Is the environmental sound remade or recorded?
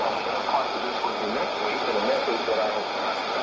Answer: recorded